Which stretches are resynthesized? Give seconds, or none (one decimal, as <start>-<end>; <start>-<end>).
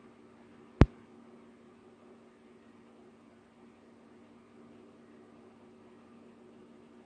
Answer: none